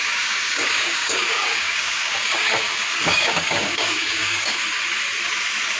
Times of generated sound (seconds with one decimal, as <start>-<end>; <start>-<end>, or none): 0.0-4.6

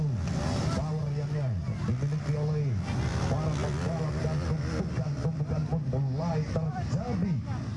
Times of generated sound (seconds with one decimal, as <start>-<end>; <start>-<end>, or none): none

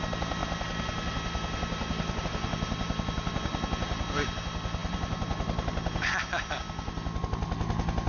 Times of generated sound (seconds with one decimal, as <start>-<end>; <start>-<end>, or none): none

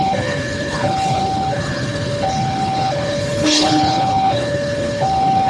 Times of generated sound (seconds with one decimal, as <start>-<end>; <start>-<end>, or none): 0.0-5.5

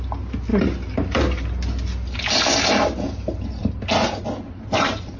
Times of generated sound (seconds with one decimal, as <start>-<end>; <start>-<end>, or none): none

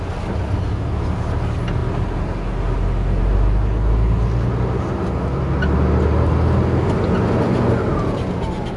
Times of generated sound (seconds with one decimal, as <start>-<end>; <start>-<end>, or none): none